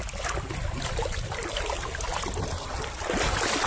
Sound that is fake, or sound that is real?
real